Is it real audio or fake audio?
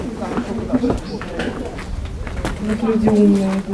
real